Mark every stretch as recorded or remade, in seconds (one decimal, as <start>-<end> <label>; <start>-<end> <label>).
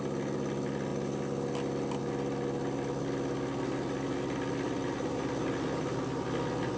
0.0-6.8 recorded